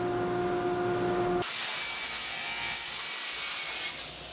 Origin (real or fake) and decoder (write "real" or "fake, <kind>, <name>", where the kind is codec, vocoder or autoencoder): real